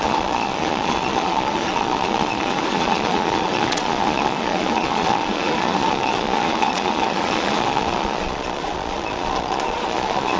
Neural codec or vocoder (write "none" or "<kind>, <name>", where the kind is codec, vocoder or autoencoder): vocoder, Vocos